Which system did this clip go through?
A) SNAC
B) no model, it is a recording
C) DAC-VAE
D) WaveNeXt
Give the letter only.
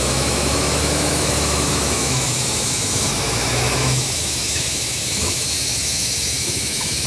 C